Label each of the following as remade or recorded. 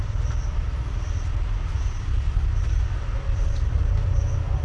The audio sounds remade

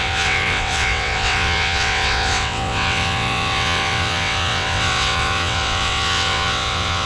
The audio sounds remade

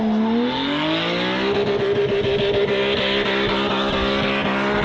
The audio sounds recorded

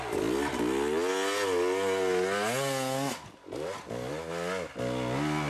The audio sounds recorded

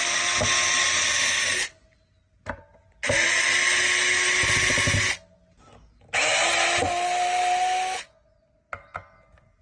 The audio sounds recorded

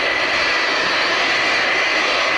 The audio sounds recorded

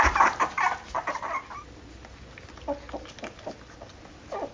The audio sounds recorded